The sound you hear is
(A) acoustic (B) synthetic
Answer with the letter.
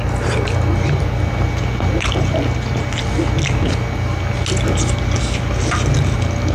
A